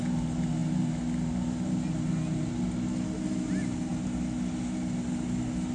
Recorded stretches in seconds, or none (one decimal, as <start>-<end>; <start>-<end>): 0.0-5.7